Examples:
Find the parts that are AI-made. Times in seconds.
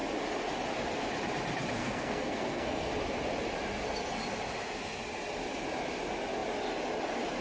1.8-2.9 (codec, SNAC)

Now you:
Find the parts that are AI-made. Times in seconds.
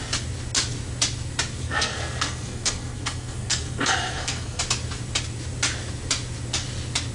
1.6-4.6 (codec, SNAC)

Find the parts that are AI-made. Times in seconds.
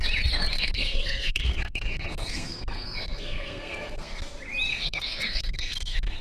0.5-4.2 (codec, SNAC); 4.7-6.2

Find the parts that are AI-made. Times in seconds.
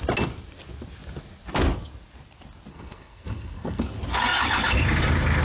2.7-3.8 (codec, SNAC)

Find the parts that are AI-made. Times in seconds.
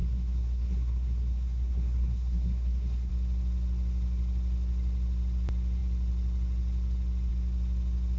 0.0-3.1 (codec, SNAC)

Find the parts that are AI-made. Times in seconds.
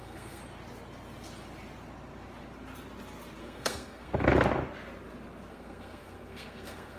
0.0-0.4 (codec, SNAC); 3.4-4.1; 5.5-7.0